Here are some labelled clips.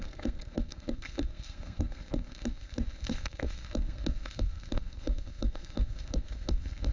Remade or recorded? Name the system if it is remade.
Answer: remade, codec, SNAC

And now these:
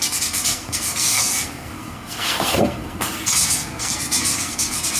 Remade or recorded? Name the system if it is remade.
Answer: remade, codec, SNAC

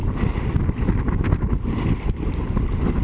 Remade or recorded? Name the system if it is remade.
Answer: recorded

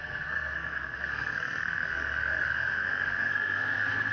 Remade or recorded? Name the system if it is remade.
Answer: remade, codec, SNAC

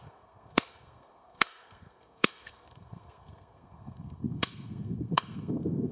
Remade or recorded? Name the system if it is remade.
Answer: remade, codec, SNAC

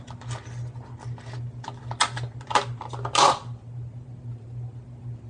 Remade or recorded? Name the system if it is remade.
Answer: recorded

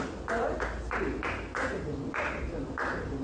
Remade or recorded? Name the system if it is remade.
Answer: recorded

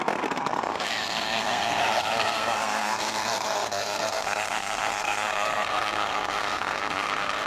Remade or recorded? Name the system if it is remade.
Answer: remade, codec, SNAC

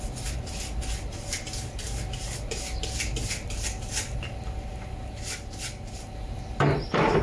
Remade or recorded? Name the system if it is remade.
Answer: recorded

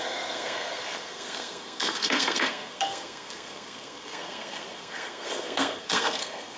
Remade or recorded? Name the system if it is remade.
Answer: remade, codec, SNAC